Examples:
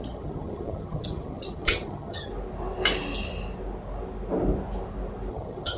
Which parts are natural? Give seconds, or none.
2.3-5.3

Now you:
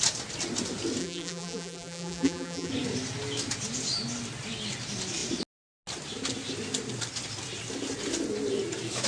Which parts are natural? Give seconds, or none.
0.0-1.0; 2.7-9.1

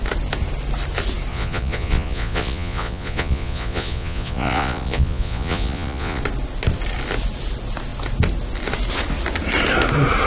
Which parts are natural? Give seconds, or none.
0.0-1.3; 6.2-10.3

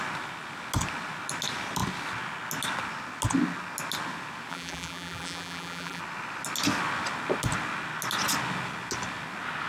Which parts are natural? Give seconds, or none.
0.0-4.5; 6.0-9.7

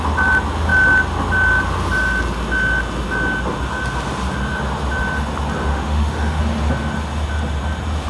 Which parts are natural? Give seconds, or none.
0.0-5.7; 6.4-8.1